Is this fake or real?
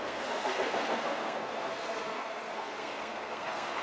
fake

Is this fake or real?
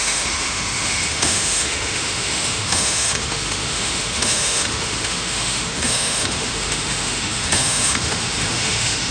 fake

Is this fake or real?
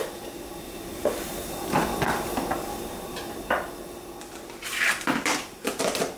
fake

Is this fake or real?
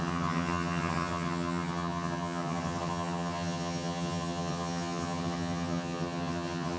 fake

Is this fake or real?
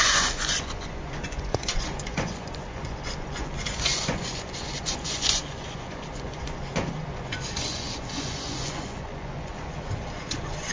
fake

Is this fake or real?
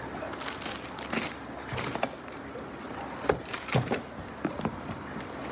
real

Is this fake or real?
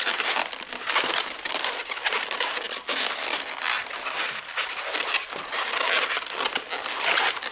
real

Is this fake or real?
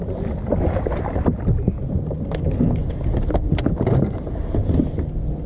real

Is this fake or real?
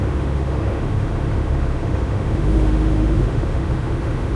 fake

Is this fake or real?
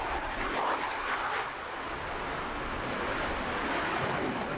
real